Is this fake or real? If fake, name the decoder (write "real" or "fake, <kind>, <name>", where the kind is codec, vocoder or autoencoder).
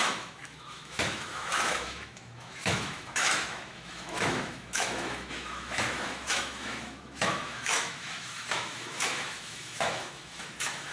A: fake, autoencoder, DAC-VAE